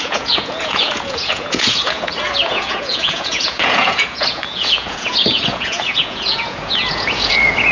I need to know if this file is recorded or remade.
remade